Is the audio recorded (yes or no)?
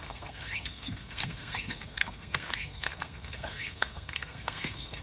no